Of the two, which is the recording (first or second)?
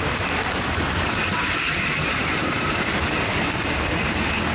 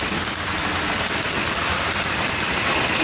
second